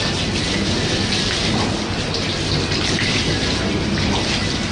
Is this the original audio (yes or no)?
yes